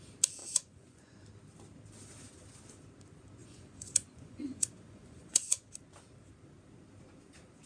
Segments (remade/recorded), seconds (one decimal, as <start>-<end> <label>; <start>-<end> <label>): 0.0-0.4 recorded; 0.4-1.2 remade; 1.2-3.4 recorded; 3.4-5.7 remade; 5.7-7.7 recorded

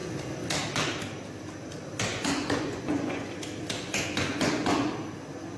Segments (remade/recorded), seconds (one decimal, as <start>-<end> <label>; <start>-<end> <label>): 0.0-2.1 recorded; 2.1-3.3 remade; 3.3-3.8 recorded; 3.8-4.9 remade; 4.9-5.6 recorded

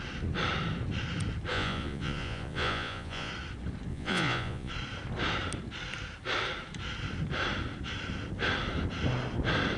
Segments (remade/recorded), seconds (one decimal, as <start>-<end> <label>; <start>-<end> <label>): 0.0-1.5 recorded; 1.5-3.3 remade; 3.3-3.9 recorded; 3.9-4.7 remade; 4.7-9.8 recorded

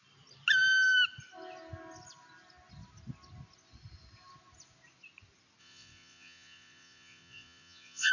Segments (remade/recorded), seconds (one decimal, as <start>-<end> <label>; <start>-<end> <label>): 0.0-5.6 recorded; 5.6-8.1 remade

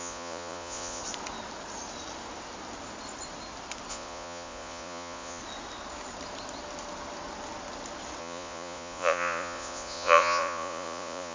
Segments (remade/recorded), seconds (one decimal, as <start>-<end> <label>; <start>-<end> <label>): 0.0-1.0 remade; 1.0-3.9 recorded; 3.9-5.4 remade; 5.4-8.2 recorded; 8.2-11.3 remade

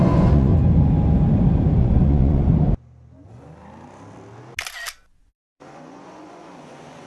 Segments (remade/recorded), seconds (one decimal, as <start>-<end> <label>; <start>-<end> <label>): 0.0-0.5 remade; 0.5-1.8 recorded; 1.8-2.5 remade; 2.5-5.2 recorded; 5.2-7.1 remade

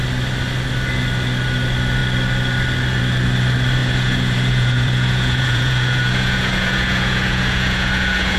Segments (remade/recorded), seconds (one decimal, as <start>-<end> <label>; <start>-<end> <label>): 0.0-3.8 recorded; 3.8-8.4 remade

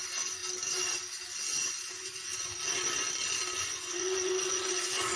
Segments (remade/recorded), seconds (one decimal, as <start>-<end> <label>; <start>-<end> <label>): 0.0-0.4 remade; 0.4-1.7 recorded; 1.7-2.3 remade; 2.3-3.6 recorded; 3.6-5.2 remade